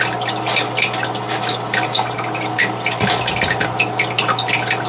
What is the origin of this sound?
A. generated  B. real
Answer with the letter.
B